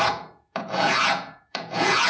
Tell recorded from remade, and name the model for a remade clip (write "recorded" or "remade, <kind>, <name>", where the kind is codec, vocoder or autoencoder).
remade, vocoder, Vocos